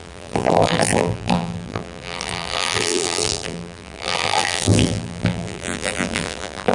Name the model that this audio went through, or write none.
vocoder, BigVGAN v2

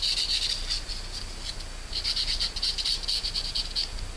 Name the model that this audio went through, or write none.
none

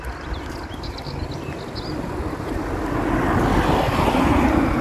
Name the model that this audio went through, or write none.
none